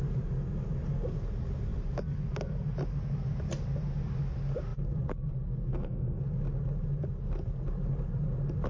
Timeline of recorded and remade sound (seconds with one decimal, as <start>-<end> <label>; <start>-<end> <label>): 0.0-5.7 recorded; 5.7-6.2 remade; 6.2-8.7 recorded